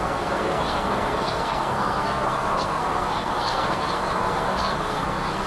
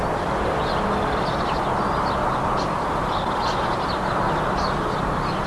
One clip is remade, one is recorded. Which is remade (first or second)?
first